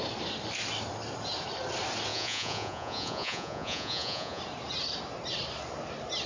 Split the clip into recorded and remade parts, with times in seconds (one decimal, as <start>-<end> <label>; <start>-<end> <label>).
0.0-2.1 recorded; 2.1-4.4 remade; 4.4-6.3 recorded